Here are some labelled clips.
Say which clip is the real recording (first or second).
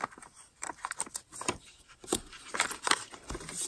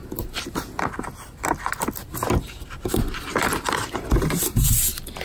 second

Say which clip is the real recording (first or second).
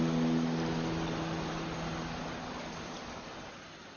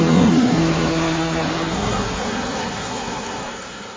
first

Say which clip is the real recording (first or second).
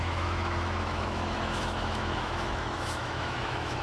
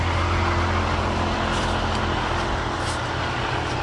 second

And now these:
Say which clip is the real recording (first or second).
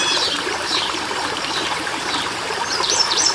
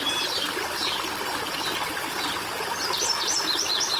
second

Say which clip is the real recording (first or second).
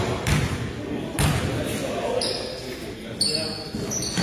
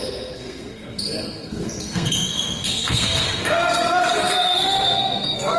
first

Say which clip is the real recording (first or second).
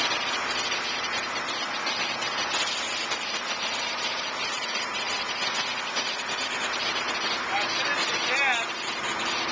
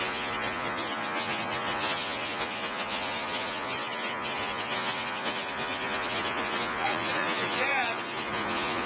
first